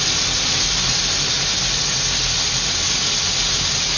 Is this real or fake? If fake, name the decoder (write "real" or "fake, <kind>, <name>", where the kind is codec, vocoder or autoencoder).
real